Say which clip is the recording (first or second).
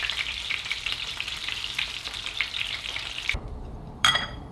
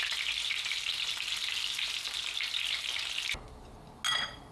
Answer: second